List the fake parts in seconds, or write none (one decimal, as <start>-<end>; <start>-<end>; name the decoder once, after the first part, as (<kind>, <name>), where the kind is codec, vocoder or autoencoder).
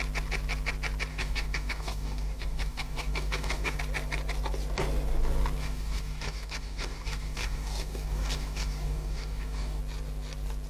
1.1-3.8 (codec, DAC); 5.6-9.8